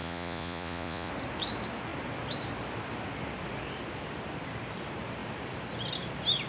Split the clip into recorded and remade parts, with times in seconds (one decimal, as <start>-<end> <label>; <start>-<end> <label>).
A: 0.0-1.1 remade; 1.1-6.5 recorded